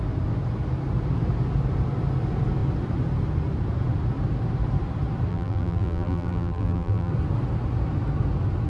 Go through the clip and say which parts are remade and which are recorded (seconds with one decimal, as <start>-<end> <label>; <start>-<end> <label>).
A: 0.0-5.3 recorded; 5.3-7.1 remade; 7.1-8.7 recorded